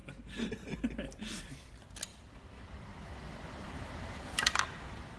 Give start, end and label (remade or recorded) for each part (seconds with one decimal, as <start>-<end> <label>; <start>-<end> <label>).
0.0-1.4 recorded; 1.4-5.2 remade